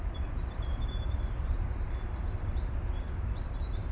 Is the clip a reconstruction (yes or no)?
yes